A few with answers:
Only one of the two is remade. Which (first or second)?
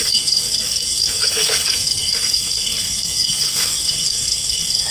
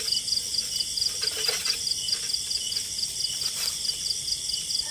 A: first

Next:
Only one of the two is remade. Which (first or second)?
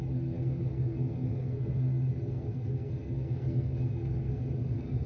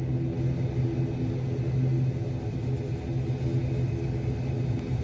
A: first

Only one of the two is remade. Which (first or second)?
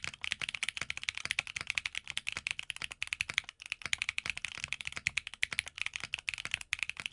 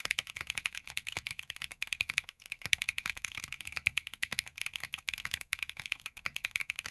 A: second